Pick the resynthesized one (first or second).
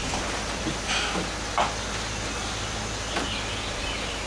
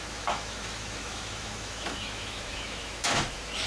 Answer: second